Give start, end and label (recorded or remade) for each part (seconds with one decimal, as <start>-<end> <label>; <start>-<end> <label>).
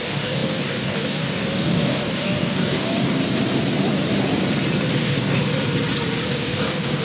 0.0-3.2 remade; 3.2-4.9 recorded; 4.9-5.4 remade; 5.4-6.3 recorded; 6.3-7.0 remade